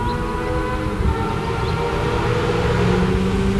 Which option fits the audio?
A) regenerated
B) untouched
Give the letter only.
B